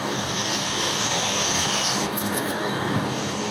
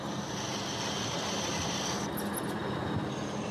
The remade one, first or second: first